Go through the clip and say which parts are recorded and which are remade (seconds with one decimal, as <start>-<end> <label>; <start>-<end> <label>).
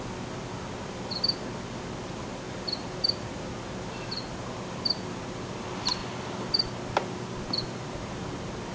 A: 0.0-6.0 recorded; 6.0-8.0 remade; 8.0-8.7 recorded